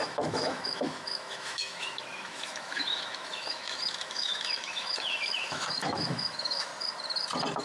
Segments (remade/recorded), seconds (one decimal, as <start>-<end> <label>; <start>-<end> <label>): 0.0-6.7 remade; 6.7-7.6 recorded